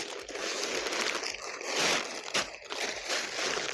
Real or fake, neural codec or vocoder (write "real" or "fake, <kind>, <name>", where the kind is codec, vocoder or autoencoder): real